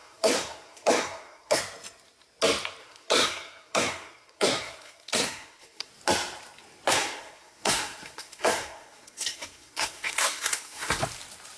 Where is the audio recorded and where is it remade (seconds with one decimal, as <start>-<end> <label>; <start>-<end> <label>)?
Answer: 0.0-1.6 remade; 1.6-2.8 recorded; 2.8-5.9 remade; 5.9-6.9 recorded; 6.9-11.0 remade; 11.0-11.6 recorded